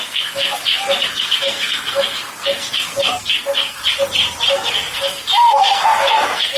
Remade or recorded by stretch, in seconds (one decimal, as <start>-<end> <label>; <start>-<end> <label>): 0.0-3.8 remade; 3.8-4.5 recorded; 4.5-6.6 remade